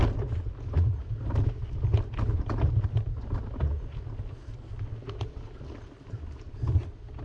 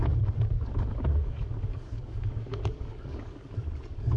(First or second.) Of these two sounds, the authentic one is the first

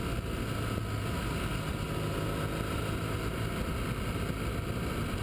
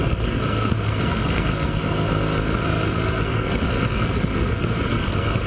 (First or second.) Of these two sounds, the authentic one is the first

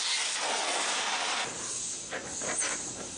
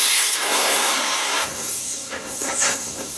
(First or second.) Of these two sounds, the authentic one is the first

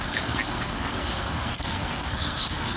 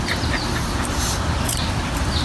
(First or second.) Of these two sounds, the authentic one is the second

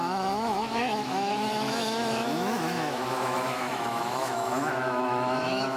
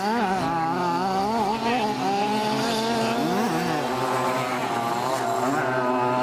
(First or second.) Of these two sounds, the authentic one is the second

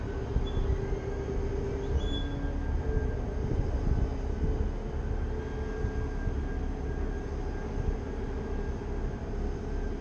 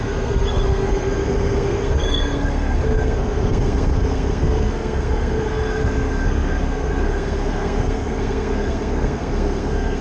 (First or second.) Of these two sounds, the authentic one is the first